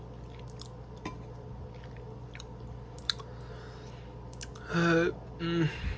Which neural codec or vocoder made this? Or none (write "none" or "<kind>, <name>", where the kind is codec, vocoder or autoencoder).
none